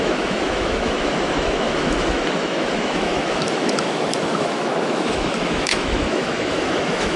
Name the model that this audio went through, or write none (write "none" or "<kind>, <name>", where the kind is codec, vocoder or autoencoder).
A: autoencoder, DAC-VAE